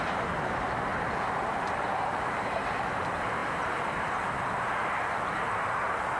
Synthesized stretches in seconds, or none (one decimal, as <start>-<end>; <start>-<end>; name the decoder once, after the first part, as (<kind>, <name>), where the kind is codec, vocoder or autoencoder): 0.0-0.9 (vocoder, BigVGAN v2); 1.7-6.2